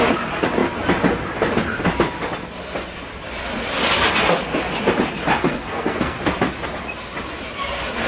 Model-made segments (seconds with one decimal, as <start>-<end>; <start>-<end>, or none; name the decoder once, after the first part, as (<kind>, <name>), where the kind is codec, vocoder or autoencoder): 5.4-6.2 (codec, SNAC)